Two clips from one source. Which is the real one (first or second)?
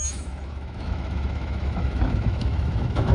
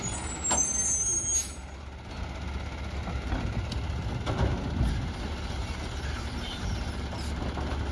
second